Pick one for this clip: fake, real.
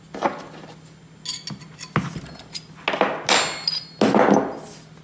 real